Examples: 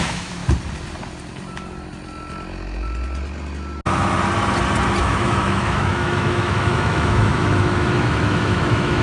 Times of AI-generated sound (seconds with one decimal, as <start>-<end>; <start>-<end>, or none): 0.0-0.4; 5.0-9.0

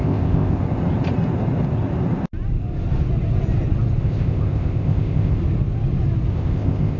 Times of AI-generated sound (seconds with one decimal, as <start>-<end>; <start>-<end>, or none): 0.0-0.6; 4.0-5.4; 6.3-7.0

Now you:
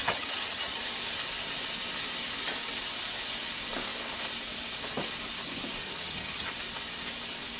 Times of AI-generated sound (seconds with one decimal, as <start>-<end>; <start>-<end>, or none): 0.0-0.8; 5.8-6.5

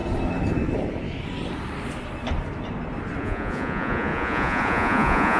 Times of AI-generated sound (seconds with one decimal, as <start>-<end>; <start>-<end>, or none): 3.2-5.4